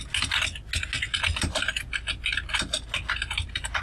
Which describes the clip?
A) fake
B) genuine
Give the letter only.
B